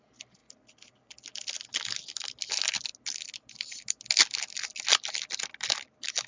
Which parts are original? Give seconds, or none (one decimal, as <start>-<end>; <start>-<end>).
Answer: 0.0-6.3